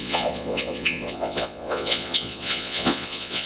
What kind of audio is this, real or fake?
fake